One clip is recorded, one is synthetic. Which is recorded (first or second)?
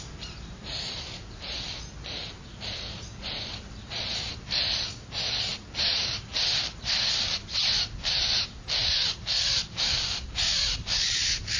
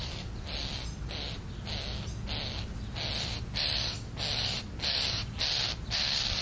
second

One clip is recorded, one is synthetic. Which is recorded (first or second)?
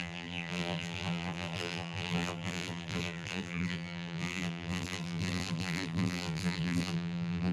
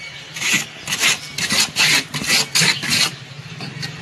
second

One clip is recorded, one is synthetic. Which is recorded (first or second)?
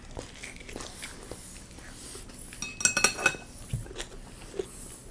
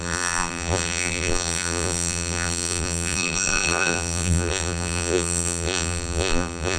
first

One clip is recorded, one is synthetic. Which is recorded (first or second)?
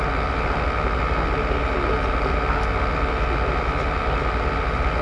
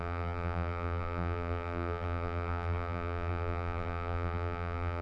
first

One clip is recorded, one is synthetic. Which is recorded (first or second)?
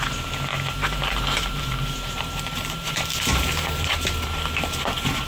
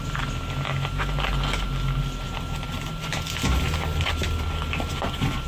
second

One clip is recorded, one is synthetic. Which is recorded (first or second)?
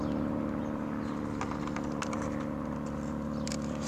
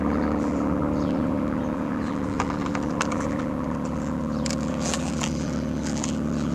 first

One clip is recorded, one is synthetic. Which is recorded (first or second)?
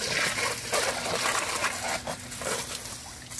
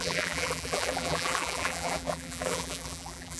first